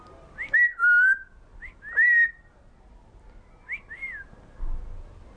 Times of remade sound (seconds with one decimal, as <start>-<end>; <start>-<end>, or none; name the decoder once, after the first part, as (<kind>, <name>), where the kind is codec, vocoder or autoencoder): none